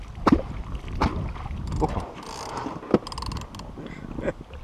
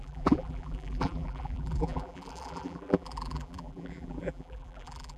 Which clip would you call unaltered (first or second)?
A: first